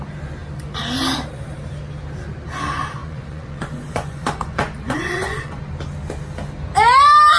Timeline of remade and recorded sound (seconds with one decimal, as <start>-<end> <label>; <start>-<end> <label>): 0.0-3.0 recorded; 3.0-5.6 remade; 5.6-7.4 recorded